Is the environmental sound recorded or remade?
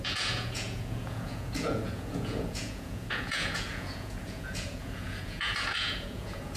remade